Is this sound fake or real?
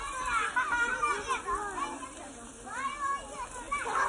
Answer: real